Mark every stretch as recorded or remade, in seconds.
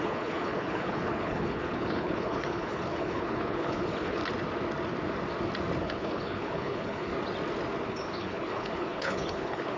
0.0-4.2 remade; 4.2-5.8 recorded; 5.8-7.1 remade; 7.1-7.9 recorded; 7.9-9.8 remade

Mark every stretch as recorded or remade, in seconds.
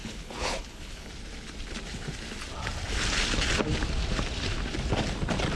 0.0-1.1 remade; 1.1-5.6 recorded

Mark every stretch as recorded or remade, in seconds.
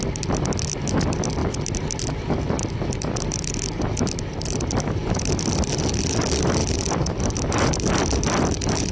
0.0-8.9 recorded